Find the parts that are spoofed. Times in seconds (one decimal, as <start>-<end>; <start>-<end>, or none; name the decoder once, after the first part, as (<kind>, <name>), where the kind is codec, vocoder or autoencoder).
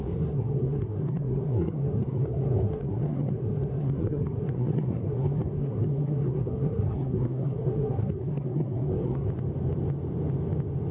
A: 0.0-9.3 (codec, SNAC)